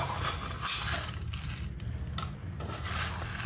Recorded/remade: recorded